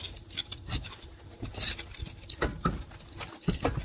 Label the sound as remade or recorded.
recorded